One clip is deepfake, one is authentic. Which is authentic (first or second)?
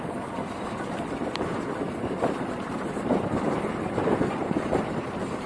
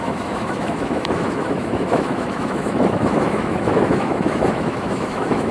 first